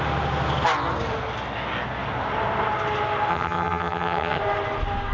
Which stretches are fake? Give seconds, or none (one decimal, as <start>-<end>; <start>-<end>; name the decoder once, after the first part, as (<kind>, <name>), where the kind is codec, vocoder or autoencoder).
3.3-4.4 (vocoder, HiFi-GAN)

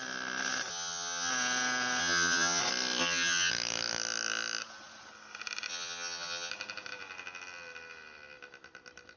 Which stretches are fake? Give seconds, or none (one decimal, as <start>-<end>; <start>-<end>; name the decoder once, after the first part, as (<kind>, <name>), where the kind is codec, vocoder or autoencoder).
0.7-1.3 (vocoder, HiFi-GAN); 2.0-2.6; 3.0-3.5; 5.7-6.5

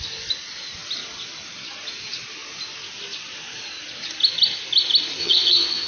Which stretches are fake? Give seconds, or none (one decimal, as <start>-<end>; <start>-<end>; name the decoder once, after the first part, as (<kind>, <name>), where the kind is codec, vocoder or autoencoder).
5.2-5.9 (vocoder, HiFi-GAN)

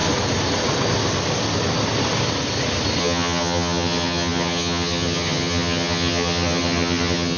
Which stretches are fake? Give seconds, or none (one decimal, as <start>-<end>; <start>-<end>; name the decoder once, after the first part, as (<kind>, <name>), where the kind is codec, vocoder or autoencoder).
3.0-7.4 (vocoder, HiFi-GAN)

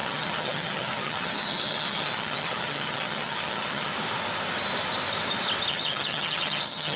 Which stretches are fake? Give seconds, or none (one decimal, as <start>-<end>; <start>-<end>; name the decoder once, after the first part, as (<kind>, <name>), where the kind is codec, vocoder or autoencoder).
0.0-3.9 (vocoder, HiFi-GAN); 5.7-7.0

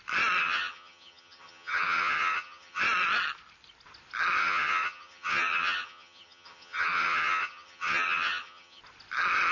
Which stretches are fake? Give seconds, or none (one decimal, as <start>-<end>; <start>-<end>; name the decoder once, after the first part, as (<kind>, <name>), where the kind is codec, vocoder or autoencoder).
0.4-2.8 (vocoder, HiFi-GAN); 4.4-8.8